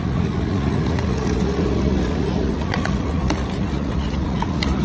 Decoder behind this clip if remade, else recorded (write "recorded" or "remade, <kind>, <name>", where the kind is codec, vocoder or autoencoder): remade, vocoder, Vocos